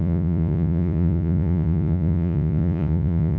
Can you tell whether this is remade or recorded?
remade